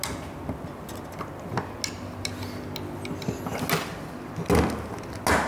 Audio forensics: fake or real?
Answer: real